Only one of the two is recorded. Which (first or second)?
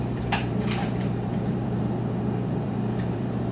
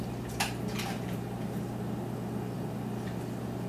second